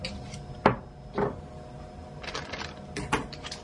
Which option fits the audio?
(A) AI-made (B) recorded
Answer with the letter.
B